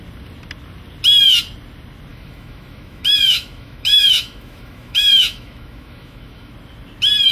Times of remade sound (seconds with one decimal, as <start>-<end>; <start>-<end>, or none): 2.1-6.5